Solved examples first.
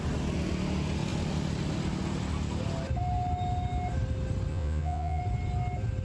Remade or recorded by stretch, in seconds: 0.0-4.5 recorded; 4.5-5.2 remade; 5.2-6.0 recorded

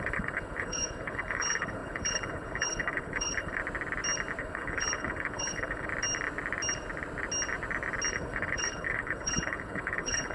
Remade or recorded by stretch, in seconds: 0.0-3.6 remade; 3.6-4.4 recorded; 4.4-5.9 remade; 5.9-8.1 recorded; 8.1-10.3 remade

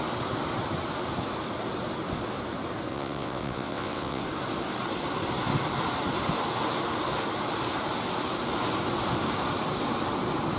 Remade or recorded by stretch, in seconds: 0.0-2.9 recorded; 2.9-4.2 remade; 4.2-10.6 recorded

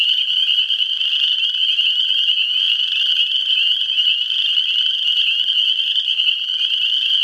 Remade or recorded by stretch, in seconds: 0.0-7.2 recorded

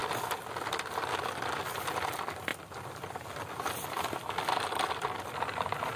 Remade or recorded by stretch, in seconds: 0.0-6.0 recorded

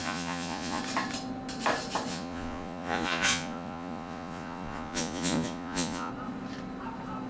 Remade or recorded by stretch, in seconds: 0.0-0.8 remade; 0.8-2.1 recorded; 2.1-6.1 remade; 6.1-7.3 recorded